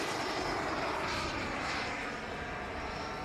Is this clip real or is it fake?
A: real